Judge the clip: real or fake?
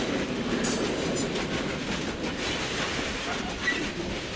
real